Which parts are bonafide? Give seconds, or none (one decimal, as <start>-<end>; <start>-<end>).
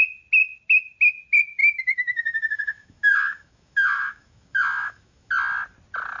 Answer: 0.0-1.6; 5.3-6.2